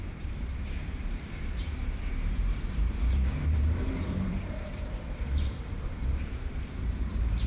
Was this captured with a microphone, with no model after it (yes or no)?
no